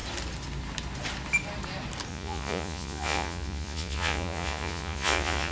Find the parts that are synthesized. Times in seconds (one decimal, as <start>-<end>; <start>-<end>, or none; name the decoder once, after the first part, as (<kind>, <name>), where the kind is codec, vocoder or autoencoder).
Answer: 2.1-5.5 (vocoder, Vocos)